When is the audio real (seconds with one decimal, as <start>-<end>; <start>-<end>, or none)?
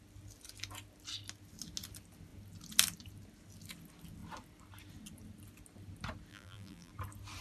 0.0-6.3; 6.9-7.4